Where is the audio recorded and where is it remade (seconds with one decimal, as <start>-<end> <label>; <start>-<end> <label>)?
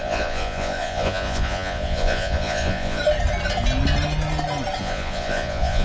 0.0-3.0 remade; 3.0-4.8 recorded; 4.8-5.8 remade